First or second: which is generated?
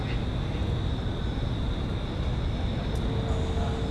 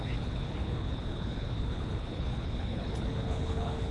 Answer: second